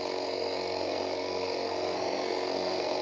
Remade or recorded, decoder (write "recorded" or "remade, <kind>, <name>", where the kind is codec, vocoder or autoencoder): remade, codec, SNAC